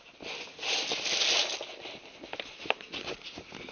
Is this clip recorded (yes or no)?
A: yes